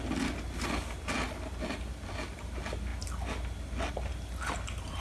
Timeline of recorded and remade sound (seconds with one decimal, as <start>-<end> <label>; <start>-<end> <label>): 0.0-5.0 recorded